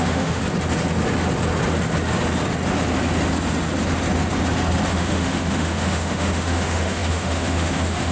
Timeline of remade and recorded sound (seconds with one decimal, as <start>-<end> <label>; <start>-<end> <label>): 0.0-0.4 remade; 0.4-4.9 recorded; 4.9-8.1 remade